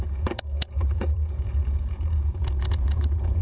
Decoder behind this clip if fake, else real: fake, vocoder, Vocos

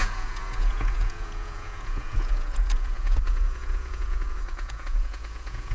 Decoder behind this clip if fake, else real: fake, vocoder, Vocos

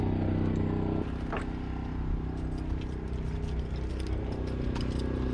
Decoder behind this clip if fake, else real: real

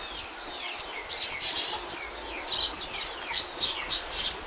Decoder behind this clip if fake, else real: real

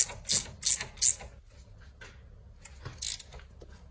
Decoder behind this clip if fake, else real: real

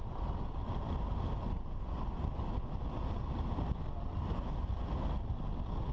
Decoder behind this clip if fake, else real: real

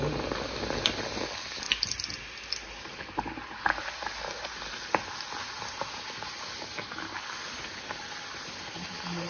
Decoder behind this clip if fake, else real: real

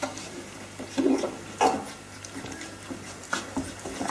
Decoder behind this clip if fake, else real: real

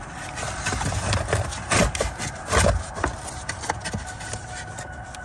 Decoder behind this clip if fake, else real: real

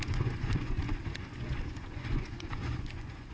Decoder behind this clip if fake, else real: fake, vocoder, Vocos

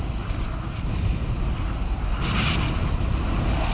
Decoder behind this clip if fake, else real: real